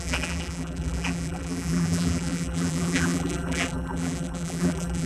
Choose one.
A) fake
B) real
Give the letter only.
A